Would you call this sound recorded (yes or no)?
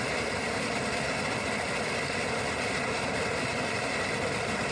yes